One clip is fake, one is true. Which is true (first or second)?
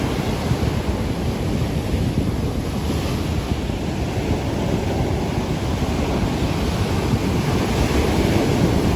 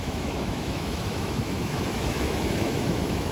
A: first